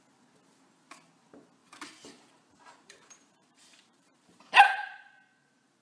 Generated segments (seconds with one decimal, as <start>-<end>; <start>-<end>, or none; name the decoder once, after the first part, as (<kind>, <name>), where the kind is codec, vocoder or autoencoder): 1.6-5.1 (vocoder, BigVGAN v2)